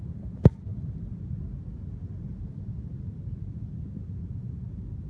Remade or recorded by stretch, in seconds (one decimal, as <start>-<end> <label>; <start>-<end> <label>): 0.0-5.1 recorded